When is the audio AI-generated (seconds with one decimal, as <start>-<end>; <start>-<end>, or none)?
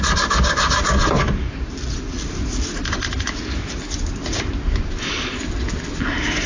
none